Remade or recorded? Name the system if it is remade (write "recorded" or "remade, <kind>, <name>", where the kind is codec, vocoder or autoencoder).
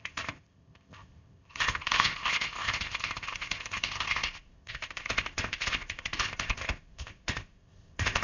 remade, codec, ZipCodec